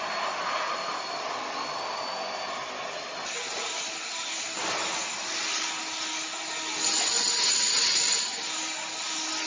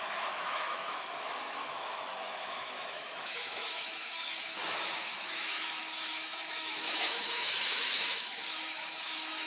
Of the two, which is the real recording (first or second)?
first